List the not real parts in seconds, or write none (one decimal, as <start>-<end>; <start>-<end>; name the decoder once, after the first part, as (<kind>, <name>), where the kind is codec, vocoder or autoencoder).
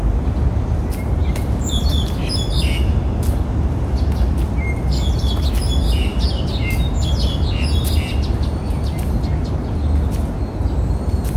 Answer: 1.2-1.9 (vocoder, BigVGAN v2); 6.1-6.6